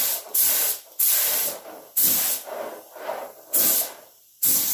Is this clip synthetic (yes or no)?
no